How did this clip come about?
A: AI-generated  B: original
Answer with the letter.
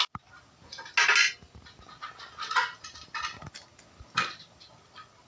B